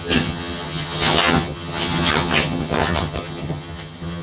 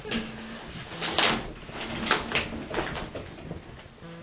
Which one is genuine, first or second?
second